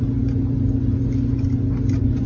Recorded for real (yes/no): yes